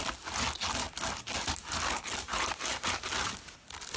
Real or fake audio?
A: real